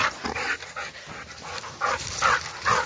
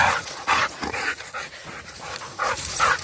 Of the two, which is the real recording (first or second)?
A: first